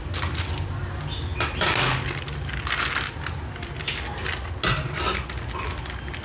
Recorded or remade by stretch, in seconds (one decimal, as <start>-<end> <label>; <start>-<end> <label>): 0.0-6.2 recorded